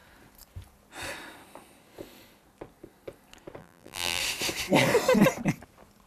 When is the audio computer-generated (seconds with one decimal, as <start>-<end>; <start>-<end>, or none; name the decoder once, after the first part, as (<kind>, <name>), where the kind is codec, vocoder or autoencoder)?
3.6-4.2 (vocoder, BigVGAN v2)